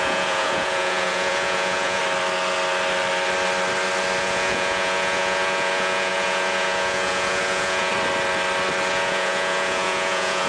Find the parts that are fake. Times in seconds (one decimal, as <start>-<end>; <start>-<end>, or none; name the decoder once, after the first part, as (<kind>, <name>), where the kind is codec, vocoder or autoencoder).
0.0-2.0 (vocoder, Vocos); 4.2-7.9; 8.9-10.5